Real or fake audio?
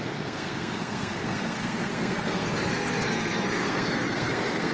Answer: fake